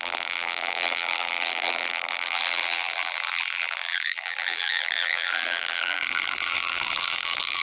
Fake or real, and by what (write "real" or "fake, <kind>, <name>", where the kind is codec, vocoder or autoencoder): fake, vocoder, BigVGAN v2